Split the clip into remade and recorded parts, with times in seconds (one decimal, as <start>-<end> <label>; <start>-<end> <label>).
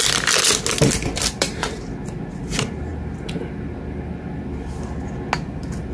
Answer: 0.0-0.8 recorded; 0.8-1.5 remade; 1.5-2.9 recorded; 2.9-3.5 remade; 3.5-5.9 recorded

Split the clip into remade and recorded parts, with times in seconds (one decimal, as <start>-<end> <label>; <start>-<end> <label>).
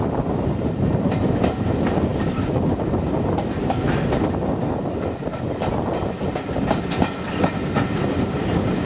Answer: 0.0-2.1 recorded; 2.1-2.9 remade; 2.9-8.8 recorded